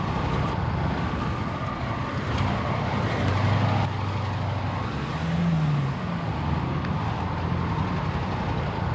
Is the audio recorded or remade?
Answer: recorded